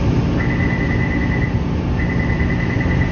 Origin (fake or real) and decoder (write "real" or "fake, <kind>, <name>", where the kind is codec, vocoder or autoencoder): real